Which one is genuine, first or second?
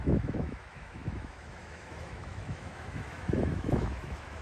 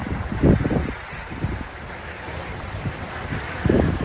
second